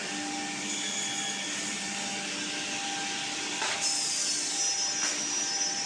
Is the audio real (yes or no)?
yes